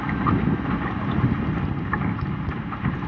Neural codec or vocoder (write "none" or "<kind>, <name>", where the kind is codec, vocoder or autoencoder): none